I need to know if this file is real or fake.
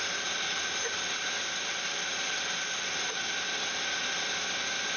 real